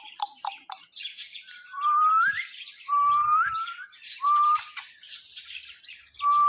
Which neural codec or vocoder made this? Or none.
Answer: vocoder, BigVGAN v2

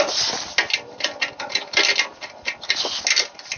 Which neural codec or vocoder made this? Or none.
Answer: none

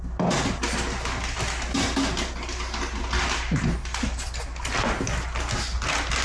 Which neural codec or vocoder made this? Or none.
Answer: none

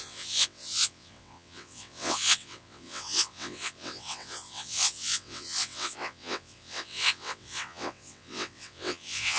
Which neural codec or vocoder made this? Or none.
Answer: vocoder, WaveNeXt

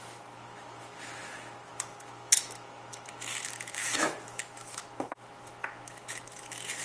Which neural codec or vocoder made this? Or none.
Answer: autoencoder, DAC-VAE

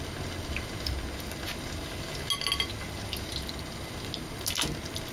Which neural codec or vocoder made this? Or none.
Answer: none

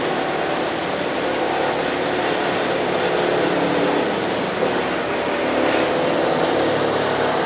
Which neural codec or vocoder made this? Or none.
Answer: none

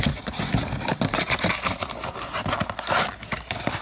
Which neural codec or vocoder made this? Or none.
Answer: none